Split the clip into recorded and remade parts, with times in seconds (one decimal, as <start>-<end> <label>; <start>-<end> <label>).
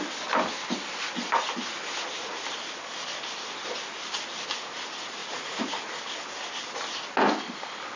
0.0-5.2 recorded; 5.2-6.0 remade; 6.0-8.0 recorded